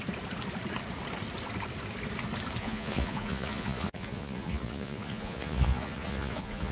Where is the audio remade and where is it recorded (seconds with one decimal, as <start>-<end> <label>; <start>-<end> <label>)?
0.0-2.6 recorded; 2.6-6.7 remade